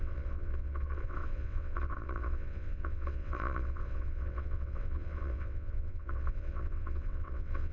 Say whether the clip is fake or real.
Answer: fake